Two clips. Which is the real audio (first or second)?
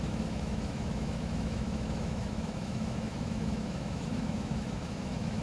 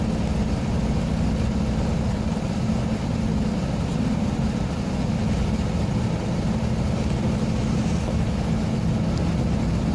second